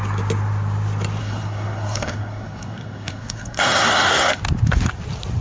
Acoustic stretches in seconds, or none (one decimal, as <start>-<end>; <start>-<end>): 0.0-1.2; 4.4-5.4